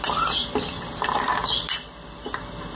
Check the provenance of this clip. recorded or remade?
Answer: recorded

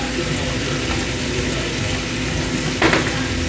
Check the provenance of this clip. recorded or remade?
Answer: recorded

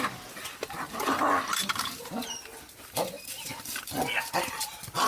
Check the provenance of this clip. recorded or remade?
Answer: recorded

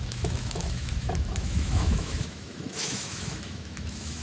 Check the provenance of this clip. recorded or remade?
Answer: remade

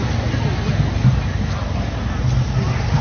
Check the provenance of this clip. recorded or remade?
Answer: recorded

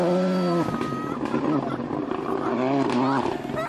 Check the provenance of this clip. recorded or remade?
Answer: recorded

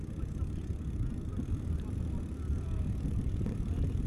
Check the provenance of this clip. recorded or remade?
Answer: recorded